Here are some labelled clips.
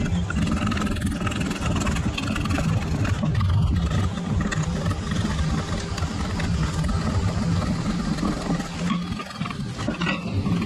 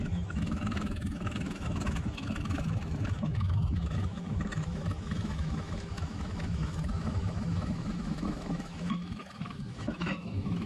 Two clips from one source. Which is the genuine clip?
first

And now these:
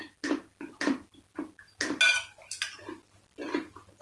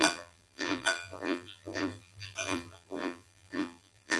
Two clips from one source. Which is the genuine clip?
first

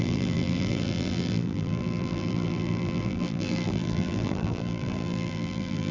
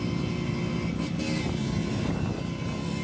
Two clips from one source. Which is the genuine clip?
second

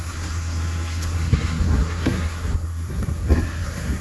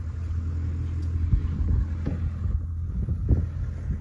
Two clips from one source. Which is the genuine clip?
second